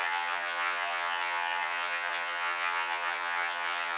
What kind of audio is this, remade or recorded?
remade